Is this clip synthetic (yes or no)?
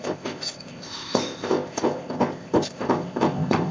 yes